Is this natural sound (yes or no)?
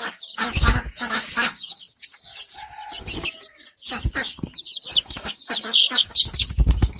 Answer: no